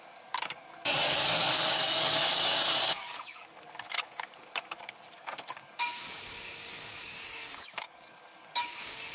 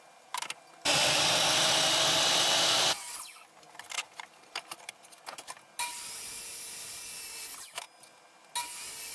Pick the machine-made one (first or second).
first